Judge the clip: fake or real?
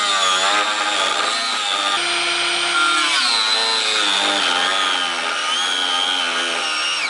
real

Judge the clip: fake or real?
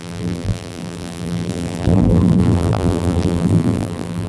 fake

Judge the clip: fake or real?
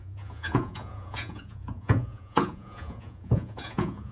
fake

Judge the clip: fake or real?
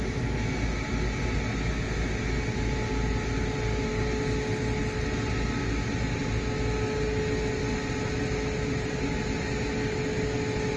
real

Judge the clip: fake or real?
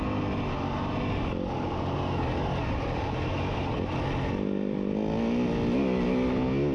real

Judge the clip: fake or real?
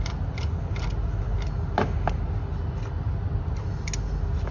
real